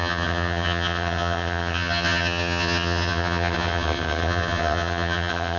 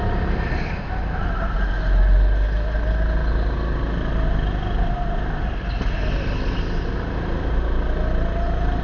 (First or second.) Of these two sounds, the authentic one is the second